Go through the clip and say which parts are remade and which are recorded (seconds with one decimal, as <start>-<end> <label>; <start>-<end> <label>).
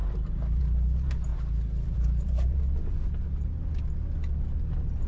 0.0-1.3 recorded; 1.3-2.6 remade; 2.6-5.1 recorded